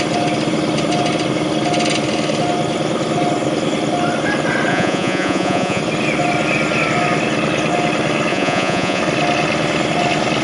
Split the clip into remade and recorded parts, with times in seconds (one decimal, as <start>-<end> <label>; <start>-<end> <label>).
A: 0.0-4.7 recorded; 4.7-5.8 remade; 5.8-8.3 recorded; 8.3-9.0 remade; 9.0-10.4 recorded